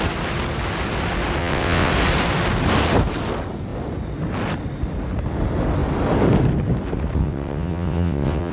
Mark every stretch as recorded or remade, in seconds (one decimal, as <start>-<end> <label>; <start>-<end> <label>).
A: 0.0-1.4 recorded; 1.4-1.9 remade; 1.9-7.2 recorded; 7.2-8.5 remade